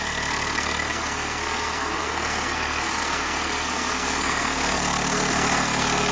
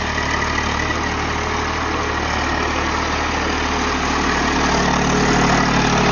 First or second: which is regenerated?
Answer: first